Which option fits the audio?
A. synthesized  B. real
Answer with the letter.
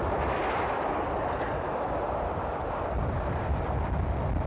B